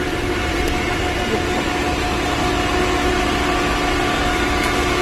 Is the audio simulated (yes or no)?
no